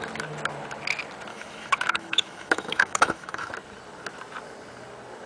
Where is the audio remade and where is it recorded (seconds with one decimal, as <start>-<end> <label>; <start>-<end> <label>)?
0.0-1.3 recorded; 1.3-3.5 remade; 3.5-5.3 recorded